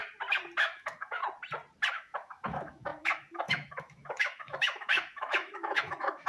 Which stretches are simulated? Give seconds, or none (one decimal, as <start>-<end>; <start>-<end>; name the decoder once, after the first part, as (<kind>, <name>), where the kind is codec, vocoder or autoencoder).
0.6-1.2 (autoencoder, DAC-VAE); 1.9-6.3